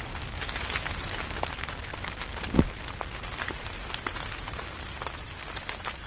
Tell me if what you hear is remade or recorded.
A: recorded